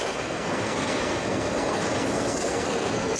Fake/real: fake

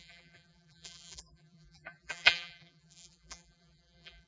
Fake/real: fake